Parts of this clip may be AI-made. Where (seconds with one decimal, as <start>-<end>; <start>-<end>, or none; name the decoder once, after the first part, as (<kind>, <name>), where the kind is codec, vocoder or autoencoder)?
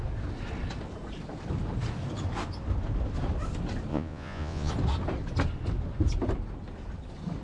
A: 3.9-4.7 (vocoder, Vocos)